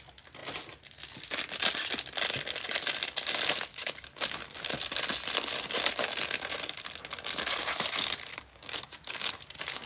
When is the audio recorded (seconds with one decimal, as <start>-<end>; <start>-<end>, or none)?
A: 0.0-3.7; 4.7-8.3; 9.3-9.9